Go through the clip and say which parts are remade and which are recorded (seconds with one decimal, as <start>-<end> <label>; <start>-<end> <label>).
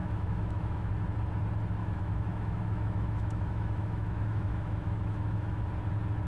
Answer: 0.0-0.9 remade; 0.9-1.8 recorded; 1.8-5.6 remade; 5.6-6.3 recorded